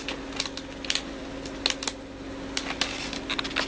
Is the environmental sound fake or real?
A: real